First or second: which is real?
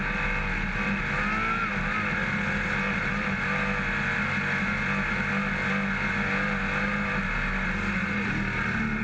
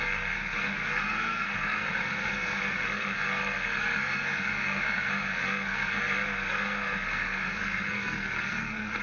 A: first